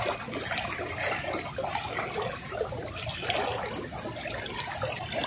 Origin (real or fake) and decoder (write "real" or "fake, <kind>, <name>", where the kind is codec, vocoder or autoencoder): real